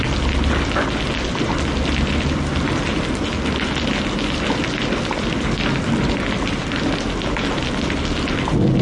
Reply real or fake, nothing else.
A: real